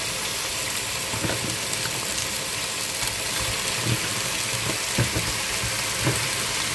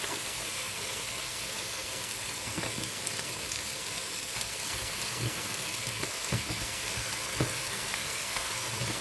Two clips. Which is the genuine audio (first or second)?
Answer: first